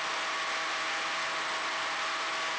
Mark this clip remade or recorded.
remade